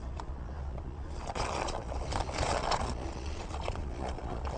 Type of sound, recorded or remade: remade